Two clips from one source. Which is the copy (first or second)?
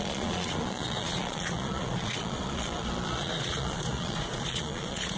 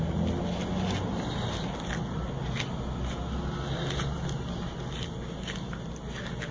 first